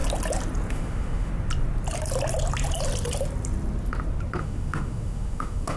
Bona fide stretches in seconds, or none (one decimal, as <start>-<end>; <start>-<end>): 0.0-0.7; 1.3-4.4